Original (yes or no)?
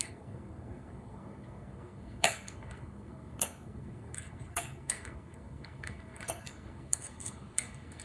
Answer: no